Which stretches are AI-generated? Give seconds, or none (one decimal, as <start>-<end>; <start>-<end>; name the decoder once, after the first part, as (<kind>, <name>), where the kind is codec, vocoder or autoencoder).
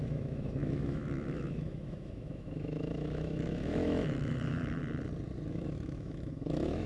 0.0-4.8 (autoencoder, DAC-VAE); 5.5-6.9